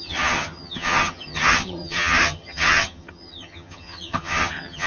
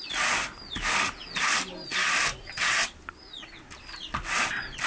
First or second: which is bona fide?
second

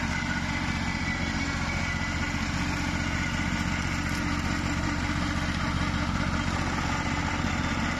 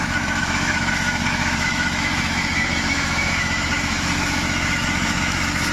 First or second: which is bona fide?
first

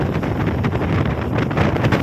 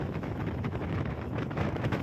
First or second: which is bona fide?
first